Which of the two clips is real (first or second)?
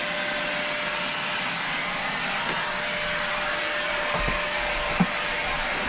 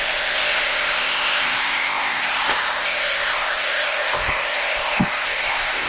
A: first